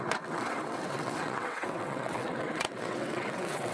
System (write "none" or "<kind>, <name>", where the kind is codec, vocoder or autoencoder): vocoder, WaveNeXt